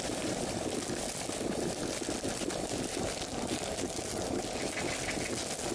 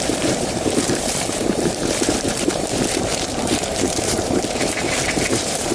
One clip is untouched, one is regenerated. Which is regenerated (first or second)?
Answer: second